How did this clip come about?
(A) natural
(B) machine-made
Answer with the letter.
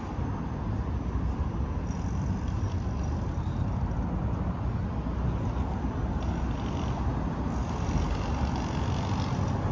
A